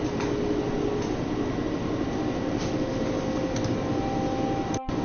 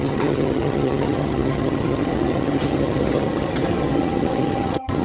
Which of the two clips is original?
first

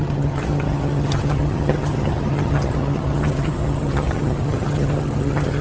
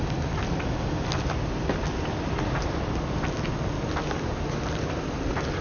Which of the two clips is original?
second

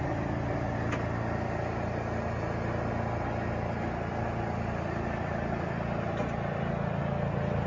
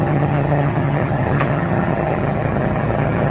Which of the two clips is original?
first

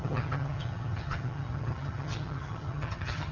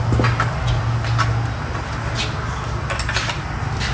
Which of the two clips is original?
second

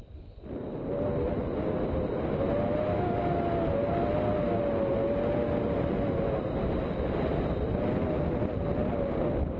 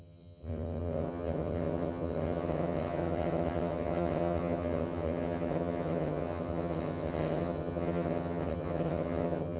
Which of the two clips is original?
first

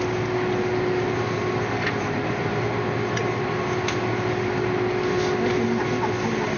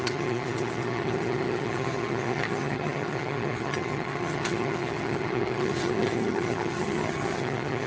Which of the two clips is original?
first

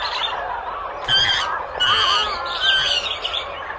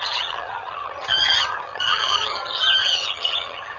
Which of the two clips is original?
first